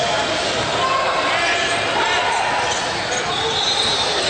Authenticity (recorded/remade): recorded